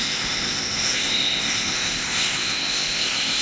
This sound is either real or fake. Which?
fake